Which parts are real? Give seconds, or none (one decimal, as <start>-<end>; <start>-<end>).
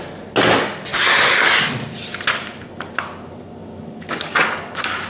0.0-3.6